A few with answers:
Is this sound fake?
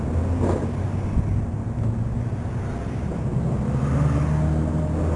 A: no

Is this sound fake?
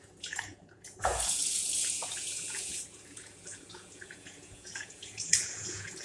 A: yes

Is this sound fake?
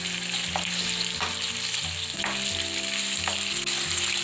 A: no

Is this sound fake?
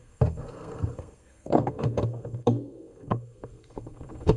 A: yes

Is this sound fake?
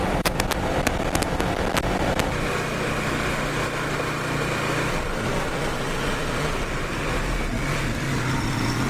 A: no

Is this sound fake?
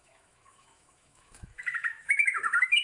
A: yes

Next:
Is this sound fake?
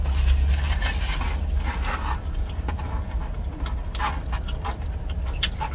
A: no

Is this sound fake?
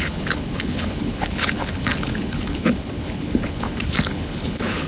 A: yes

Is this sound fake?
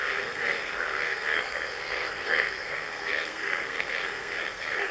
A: yes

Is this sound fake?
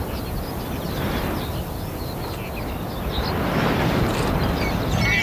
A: no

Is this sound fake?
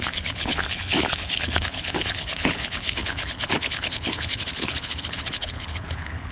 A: yes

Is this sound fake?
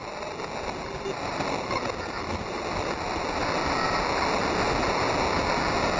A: no